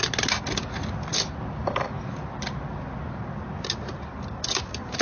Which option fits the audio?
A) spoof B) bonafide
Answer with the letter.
B